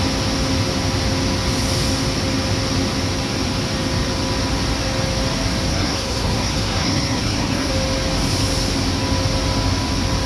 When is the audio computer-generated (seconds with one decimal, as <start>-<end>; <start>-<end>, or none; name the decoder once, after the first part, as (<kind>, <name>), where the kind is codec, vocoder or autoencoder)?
5.7-7.7 (codec, SNAC)